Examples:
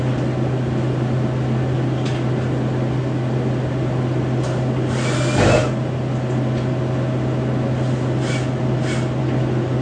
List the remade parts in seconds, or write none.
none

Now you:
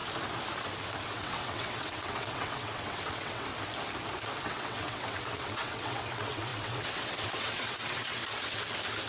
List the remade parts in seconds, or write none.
1.1-3.5 (vocoder, WaveNeXt); 4.4-8.2

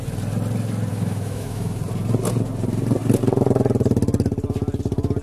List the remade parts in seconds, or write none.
0.9-1.8 (autoencoder, DAC-VAE)